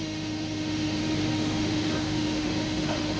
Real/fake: fake